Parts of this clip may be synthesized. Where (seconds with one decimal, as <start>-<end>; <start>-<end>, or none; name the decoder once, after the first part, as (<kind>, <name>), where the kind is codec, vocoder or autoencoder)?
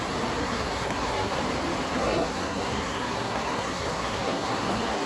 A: 0.4-1.4 (codec, SNAC); 1.9-5.1